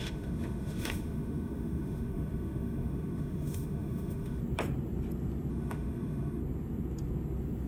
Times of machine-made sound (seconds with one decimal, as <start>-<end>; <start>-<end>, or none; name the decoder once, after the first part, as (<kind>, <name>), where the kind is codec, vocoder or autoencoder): 0.0-4.4 (autoencoder, DAC-VAE); 5.5-6.4

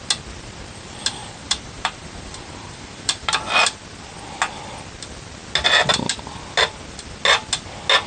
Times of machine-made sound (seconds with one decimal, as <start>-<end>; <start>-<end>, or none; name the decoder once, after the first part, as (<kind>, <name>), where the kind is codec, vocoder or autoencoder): 1.2-3.3 (vocoder, BigVGAN v2)

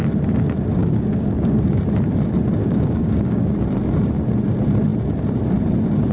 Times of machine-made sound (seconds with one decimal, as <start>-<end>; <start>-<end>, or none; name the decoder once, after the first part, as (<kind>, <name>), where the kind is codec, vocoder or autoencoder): 0.8-1.8 (codec, DAC); 2.6-3.5

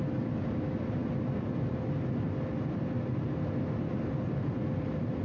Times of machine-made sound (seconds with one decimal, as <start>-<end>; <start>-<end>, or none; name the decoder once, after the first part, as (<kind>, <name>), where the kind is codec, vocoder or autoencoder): none

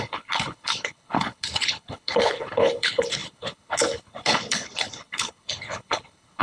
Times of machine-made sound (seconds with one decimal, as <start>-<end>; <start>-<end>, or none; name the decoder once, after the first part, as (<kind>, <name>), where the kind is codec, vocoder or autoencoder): 0.0-6.4 (codec, HILCodec)

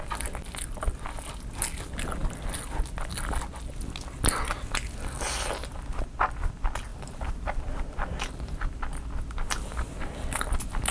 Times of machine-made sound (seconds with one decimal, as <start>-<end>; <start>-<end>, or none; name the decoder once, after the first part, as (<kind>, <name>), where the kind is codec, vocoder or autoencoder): 6.9-8.7 (vocoder, BigVGAN v2)

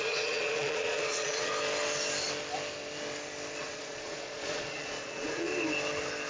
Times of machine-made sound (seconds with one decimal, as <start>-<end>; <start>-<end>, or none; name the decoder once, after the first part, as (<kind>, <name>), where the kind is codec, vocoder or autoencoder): 0.0-1.5 (vocoder, Vocos); 3.6-5.5